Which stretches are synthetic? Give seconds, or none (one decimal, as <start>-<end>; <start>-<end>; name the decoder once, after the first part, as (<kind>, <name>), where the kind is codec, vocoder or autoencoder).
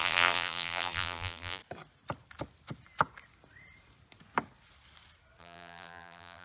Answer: 0.0-1.6 (vocoder, BigVGAN v2); 5.4-6.4